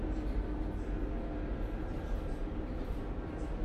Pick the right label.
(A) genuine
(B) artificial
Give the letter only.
A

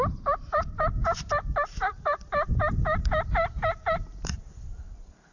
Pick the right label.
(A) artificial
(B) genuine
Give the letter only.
A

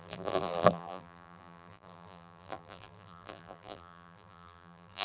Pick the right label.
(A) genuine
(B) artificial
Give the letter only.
B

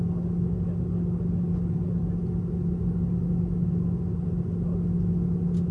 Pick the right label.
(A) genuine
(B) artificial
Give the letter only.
A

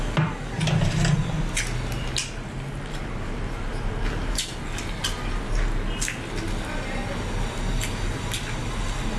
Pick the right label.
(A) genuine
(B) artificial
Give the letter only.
A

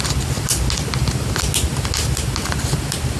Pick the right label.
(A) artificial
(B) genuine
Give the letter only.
B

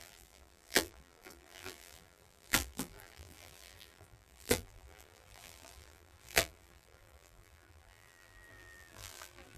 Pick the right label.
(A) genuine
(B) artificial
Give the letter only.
B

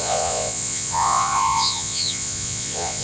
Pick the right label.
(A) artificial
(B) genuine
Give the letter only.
A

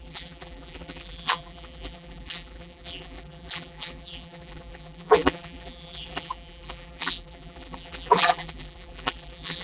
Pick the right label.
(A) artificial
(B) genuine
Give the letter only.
A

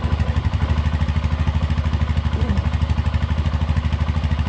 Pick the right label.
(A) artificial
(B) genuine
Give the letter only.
B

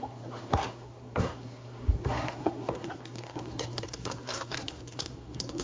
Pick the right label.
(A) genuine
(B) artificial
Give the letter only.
B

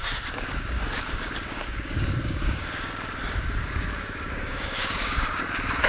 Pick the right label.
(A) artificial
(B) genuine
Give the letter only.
A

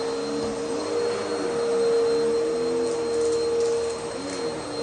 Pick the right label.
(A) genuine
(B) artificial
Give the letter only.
A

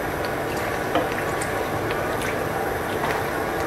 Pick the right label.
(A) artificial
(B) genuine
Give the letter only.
B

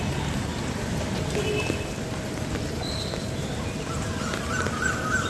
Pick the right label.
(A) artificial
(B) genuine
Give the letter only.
A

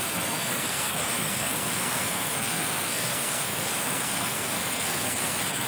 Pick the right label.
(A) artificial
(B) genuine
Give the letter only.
A